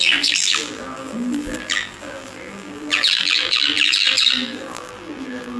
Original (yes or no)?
no